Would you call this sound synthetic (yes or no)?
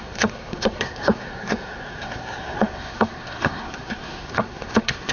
yes